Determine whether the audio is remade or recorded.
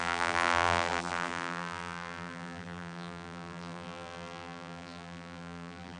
remade